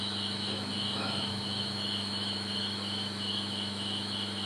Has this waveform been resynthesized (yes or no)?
yes